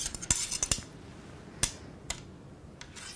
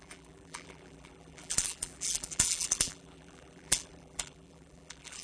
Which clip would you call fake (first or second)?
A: second